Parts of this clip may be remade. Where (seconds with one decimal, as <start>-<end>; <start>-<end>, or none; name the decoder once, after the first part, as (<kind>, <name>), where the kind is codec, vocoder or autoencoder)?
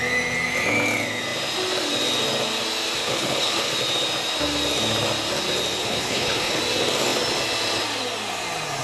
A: 3.0-3.7 (codec, HILCodec); 5.8-6.6